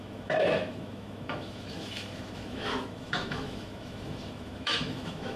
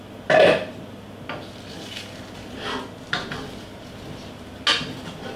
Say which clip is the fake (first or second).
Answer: first